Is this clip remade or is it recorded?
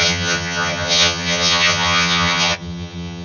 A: remade